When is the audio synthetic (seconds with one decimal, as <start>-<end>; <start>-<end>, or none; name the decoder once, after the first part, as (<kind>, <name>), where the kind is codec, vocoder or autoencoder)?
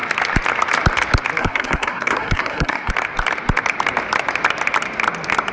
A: 1.4-2.9 (codec, SNAC)